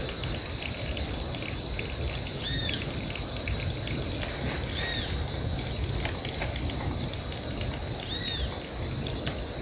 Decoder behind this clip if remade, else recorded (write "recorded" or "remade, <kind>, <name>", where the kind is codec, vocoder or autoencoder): recorded